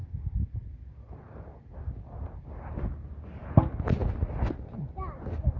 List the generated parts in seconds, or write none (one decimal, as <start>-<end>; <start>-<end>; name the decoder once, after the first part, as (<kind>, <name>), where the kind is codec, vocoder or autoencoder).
none